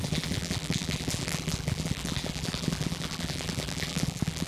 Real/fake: fake